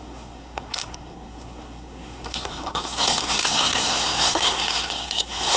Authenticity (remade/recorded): remade